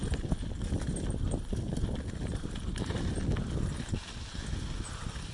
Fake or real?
real